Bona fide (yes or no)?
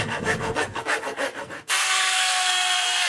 no